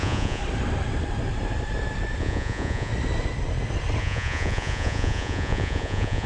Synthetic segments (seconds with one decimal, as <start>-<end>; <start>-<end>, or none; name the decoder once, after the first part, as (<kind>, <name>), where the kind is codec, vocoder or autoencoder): 0.0-0.4 (vocoder, Vocos); 2.2-2.9; 4.0-6.3